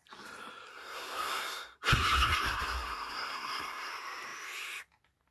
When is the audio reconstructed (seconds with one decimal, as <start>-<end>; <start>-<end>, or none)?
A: 0.7-3.9